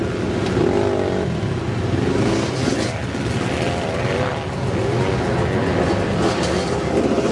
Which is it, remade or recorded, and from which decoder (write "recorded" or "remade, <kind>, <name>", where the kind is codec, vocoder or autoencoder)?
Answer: recorded